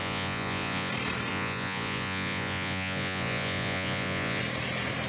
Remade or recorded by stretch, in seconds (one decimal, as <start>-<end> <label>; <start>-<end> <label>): 0.0-0.9 remade; 0.9-1.3 recorded; 1.3-4.4 remade; 4.4-5.1 recorded